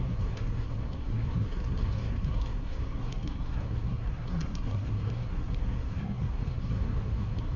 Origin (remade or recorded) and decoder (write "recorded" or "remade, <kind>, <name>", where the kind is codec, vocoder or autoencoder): remade, codec, SNAC